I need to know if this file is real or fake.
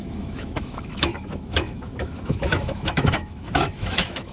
fake